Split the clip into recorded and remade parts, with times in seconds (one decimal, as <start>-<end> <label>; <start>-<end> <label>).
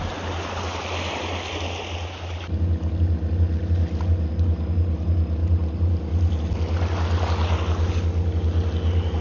0.0-9.2 recorded